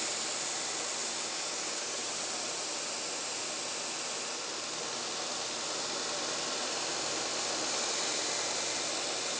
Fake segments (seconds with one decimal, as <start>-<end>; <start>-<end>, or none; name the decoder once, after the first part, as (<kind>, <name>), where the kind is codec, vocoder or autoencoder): 1.0-2.0 (codec, DAC)